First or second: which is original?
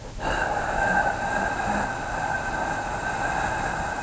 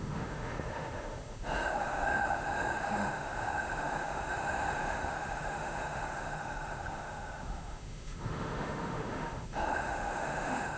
first